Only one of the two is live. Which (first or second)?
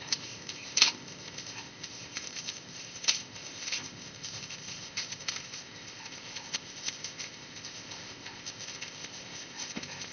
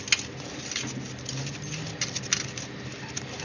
second